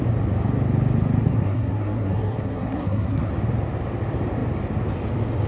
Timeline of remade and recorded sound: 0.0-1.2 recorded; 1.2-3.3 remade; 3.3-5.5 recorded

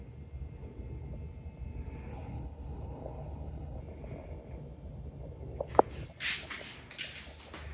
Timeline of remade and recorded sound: 0.0-2.1 recorded; 2.1-3.8 remade; 3.8-7.7 recorded

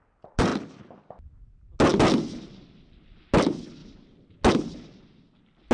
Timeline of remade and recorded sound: 0.0-5.7 recorded

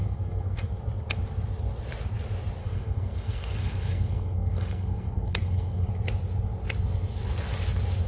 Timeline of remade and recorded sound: 0.0-0.7 remade; 0.7-2.6 recorded; 2.6-5.9 remade; 5.9-8.1 recorded

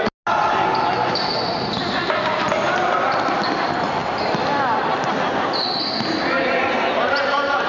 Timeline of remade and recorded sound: 0.0-7.7 recorded

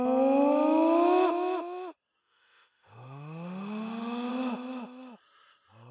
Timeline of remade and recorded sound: 0.0-2.2 recorded; 2.2-4.3 remade; 4.3-5.9 recorded

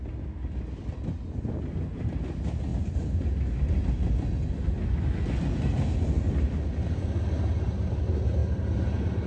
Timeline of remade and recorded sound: 0.0-9.3 recorded